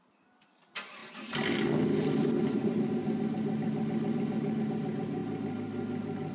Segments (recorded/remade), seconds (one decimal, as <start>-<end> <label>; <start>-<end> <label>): 0.0-1.0 remade; 1.0-4.6 recorded; 4.6-5.2 remade; 5.2-6.3 recorded